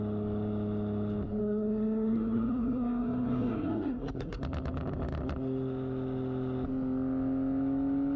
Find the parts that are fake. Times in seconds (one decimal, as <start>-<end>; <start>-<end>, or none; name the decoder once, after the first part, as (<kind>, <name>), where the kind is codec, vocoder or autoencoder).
1.4-4.4 (codec, SNAC)